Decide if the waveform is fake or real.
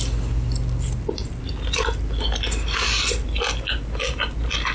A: real